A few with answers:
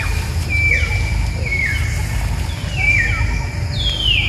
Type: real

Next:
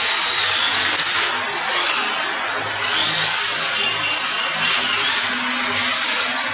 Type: real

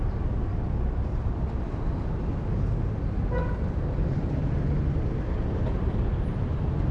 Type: real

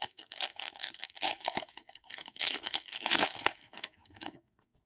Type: fake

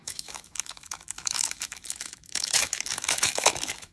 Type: fake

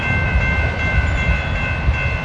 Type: real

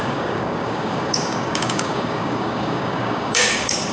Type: fake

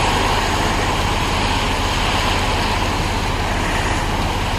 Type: real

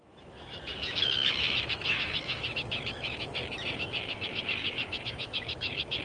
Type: fake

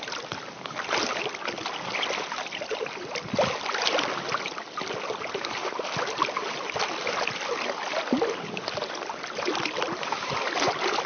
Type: real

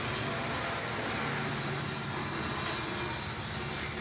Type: real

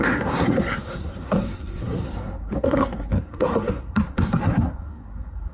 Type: fake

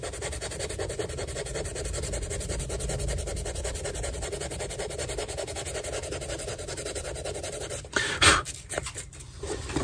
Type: fake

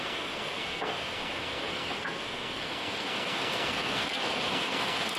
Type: fake